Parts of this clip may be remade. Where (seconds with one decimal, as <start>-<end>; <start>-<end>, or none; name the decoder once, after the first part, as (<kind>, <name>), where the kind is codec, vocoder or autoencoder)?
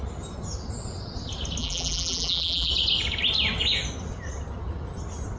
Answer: 1.6-2.7 (vocoder, BigVGAN v2)